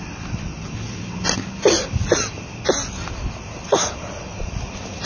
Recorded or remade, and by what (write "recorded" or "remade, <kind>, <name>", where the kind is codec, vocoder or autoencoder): recorded